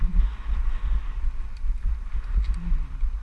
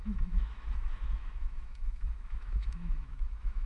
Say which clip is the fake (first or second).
second